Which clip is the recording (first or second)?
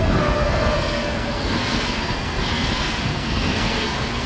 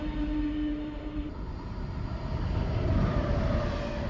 second